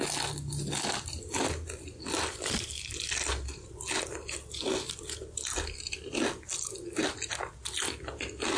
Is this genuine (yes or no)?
yes